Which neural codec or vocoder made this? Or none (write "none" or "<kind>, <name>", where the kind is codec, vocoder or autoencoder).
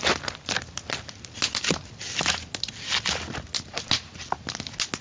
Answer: none